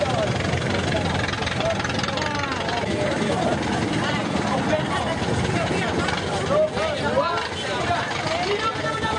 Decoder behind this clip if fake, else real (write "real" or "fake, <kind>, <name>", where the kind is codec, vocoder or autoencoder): real